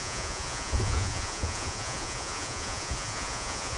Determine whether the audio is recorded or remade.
remade